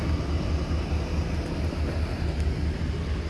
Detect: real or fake real